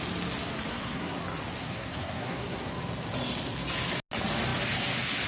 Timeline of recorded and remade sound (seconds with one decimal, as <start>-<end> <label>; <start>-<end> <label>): 0.0-0.7 recorded; 0.7-1.2 remade; 1.2-1.6 recorded; 1.6-2.7 remade; 2.7-5.3 recorded